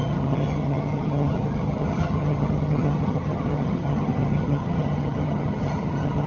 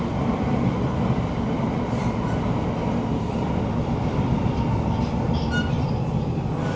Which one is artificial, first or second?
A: first